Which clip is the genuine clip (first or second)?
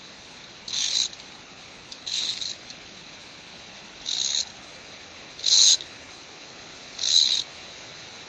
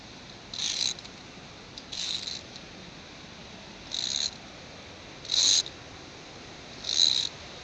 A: second